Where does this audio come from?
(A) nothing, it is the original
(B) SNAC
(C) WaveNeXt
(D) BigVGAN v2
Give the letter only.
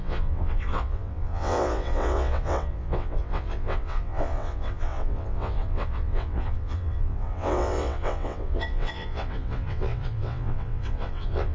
C